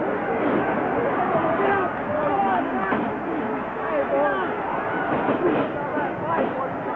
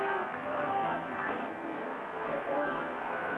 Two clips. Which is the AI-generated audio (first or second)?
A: second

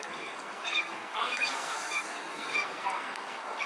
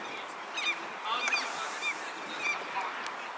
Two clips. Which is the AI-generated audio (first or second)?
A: first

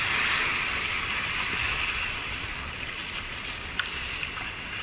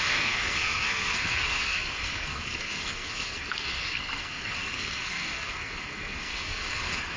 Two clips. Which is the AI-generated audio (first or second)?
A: second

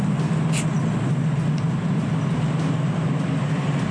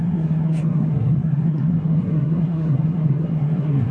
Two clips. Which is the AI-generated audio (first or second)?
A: second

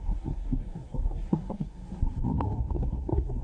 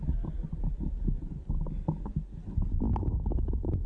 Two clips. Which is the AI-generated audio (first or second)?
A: first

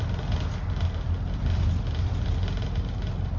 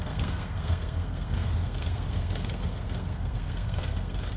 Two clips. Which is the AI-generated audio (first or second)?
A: second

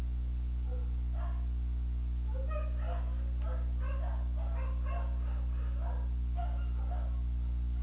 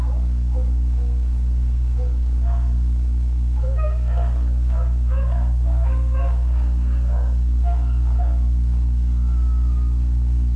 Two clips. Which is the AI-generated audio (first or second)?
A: second